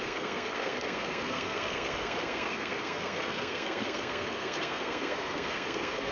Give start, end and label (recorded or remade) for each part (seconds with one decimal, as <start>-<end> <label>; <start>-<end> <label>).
0.0-6.1 remade